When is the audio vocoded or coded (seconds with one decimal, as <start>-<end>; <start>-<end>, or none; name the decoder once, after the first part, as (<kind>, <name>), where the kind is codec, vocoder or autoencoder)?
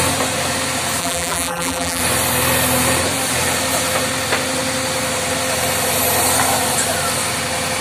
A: 1.0-2.0 (vocoder, BigVGAN v2)